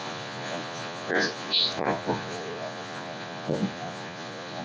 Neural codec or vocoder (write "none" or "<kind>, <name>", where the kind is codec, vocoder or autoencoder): vocoder, Vocos